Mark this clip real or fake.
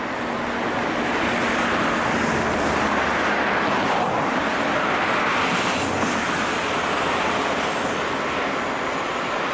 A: real